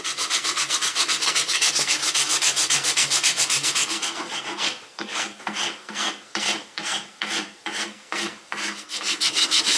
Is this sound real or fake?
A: fake